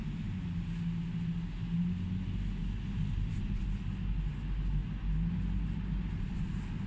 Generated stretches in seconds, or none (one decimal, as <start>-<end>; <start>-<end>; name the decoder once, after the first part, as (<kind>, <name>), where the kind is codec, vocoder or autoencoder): none